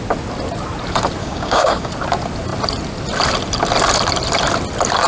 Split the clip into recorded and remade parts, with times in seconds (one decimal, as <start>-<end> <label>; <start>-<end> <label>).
0.0-1.2 recorded; 1.2-1.9 remade; 1.9-5.1 recorded